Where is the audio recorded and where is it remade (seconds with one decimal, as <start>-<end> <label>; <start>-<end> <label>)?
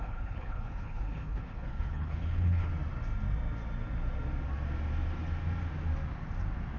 0.0-2.7 remade; 2.7-6.8 recorded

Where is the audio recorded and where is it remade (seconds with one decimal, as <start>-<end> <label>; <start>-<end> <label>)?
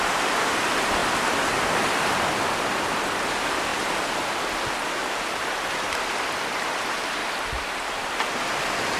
0.0-3.7 remade; 3.7-6.5 recorded; 6.5-9.0 remade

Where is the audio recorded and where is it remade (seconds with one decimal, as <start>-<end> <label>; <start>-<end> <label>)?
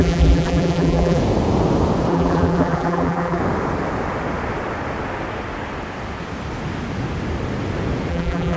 0.0-1.2 remade; 1.2-2.1 recorded; 2.1-3.4 remade; 3.4-8.1 recorded; 8.1-8.6 remade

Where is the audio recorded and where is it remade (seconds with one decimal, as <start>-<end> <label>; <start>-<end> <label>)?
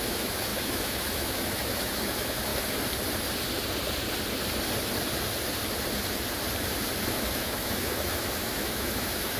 0.0-2.5 remade; 2.5-7.0 recorded; 7.0-9.4 remade